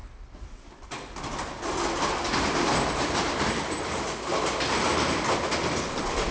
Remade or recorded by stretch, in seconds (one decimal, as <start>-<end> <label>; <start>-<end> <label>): 0.0-6.3 recorded

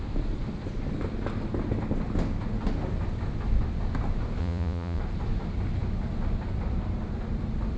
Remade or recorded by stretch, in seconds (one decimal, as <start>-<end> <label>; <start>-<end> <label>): 0.0-4.4 recorded; 4.4-5.0 remade; 5.0-7.8 recorded

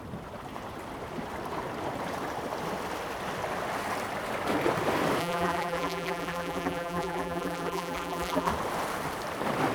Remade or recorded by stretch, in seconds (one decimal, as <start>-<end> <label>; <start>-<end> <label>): 0.0-5.2 recorded; 5.2-8.5 remade; 8.5-9.7 recorded

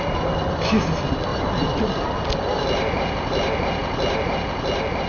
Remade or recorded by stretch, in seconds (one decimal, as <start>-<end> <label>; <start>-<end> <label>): 0.0-1.3 recorded; 1.3-2.1 remade; 2.1-5.1 recorded